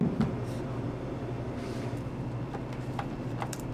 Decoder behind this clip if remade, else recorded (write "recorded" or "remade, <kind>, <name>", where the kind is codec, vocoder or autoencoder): recorded